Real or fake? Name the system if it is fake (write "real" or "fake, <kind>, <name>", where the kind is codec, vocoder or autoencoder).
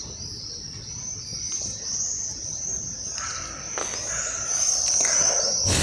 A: real